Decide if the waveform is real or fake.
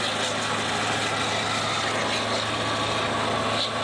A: real